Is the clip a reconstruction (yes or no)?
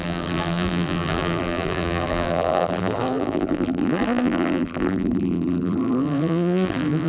yes